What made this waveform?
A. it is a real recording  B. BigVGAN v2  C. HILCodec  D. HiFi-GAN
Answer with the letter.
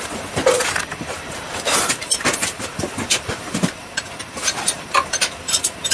B